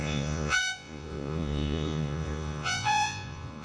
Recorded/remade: remade